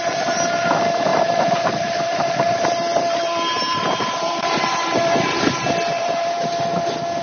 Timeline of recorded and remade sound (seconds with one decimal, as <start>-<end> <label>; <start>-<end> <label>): 0.0-1.1 recorded; 1.1-5.4 remade; 5.4-6.0 recorded; 6.0-6.5 remade; 6.5-7.2 recorded